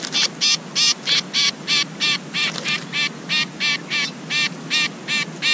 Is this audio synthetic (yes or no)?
no